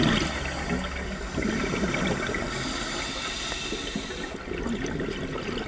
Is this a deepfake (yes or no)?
no